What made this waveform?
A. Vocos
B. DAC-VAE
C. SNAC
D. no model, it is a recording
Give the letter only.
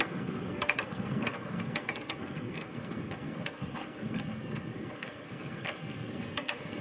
C